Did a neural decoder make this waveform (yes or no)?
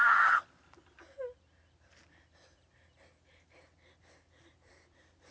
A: no